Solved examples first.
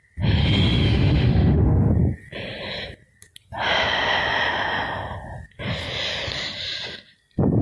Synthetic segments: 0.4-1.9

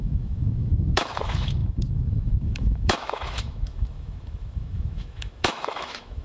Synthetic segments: 0.0-6.2

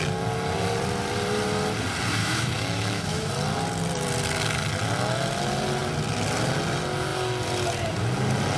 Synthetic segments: 2.2-3.3

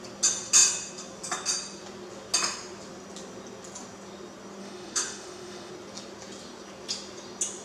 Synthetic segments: 4.6-5.7